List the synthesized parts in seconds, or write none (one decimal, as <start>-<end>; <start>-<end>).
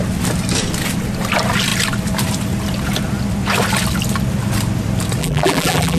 5.2-6.0